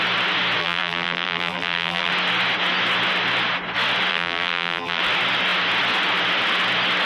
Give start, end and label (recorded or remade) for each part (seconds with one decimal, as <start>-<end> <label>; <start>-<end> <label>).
0.0-0.6 recorded; 0.6-2.1 remade; 2.1-4.1 recorded; 4.1-5.0 remade; 5.0-7.1 recorded